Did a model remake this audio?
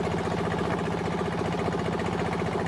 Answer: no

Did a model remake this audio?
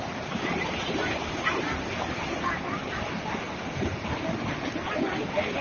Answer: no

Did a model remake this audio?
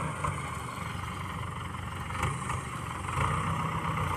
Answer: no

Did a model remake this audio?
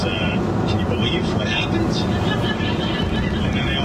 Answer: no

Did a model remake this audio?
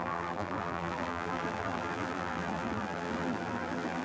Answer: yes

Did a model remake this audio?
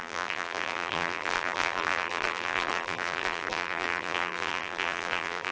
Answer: yes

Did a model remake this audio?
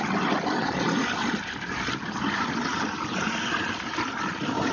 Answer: no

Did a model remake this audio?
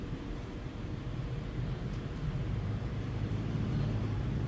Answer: yes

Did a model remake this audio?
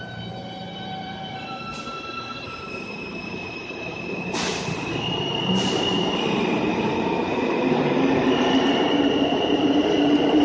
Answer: yes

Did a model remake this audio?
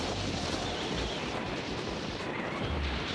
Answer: yes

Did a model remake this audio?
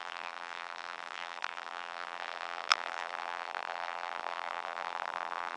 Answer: yes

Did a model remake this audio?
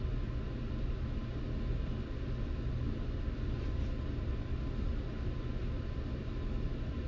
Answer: no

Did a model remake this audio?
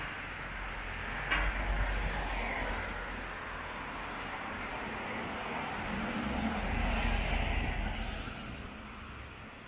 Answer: no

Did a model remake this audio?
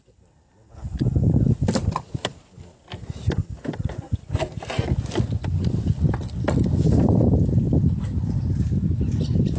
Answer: no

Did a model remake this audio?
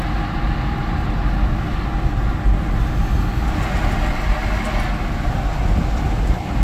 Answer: no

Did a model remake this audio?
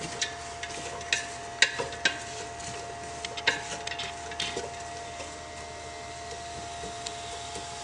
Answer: no